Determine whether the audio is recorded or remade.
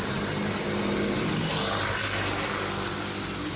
recorded